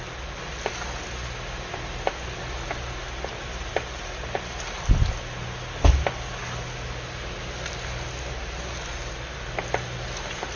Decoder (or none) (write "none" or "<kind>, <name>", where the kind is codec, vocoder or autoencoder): none